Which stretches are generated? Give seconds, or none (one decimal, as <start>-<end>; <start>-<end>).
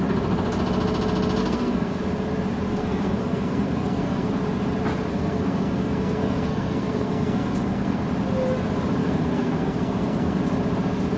1.4-2.0; 2.7-4.3; 5.1-8.1; 9.0-10.4